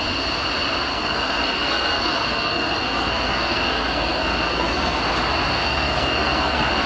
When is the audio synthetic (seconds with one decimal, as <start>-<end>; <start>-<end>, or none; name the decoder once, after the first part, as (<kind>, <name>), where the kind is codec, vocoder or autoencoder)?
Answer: 0.9-5.0 (codec, SNAC); 5.6-6.9